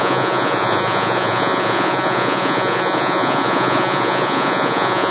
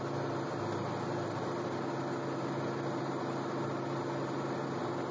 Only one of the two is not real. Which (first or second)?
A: first